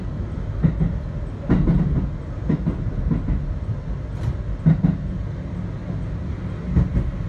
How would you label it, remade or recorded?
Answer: recorded